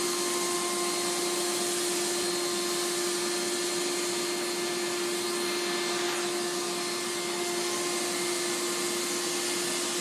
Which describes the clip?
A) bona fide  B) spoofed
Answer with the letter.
A